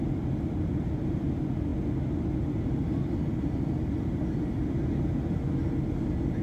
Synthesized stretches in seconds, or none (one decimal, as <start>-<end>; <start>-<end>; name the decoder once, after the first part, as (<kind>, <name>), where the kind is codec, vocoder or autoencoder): none